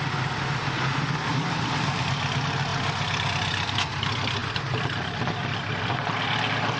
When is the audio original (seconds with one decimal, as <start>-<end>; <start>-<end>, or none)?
0.0-1.3; 2.1-2.7; 3.3-4.4; 5.8-6.8